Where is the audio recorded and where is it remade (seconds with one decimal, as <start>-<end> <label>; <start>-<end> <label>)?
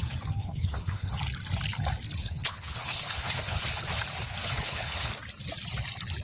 0.0-0.4 recorded; 0.4-1.1 remade; 1.1-2.2 recorded; 2.2-3.7 remade; 3.7-4.4 recorded; 4.4-5.1 remade; 5.1-6.2 recorded